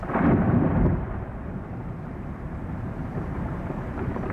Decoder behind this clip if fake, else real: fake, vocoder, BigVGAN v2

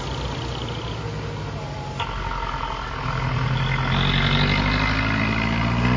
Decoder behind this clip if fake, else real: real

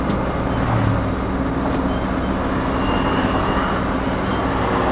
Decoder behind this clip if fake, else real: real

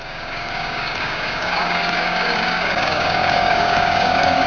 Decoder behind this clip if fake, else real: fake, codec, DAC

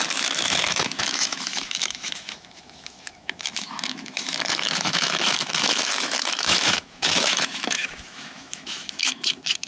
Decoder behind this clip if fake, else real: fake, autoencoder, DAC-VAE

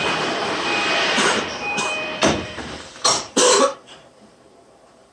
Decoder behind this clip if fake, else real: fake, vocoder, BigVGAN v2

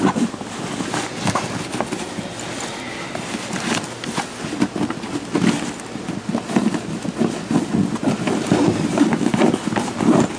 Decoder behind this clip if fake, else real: real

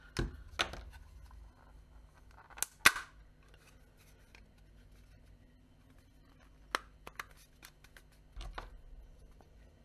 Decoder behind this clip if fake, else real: real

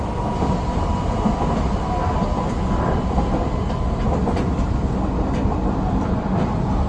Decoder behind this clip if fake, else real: real